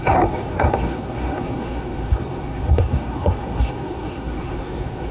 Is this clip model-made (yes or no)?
yes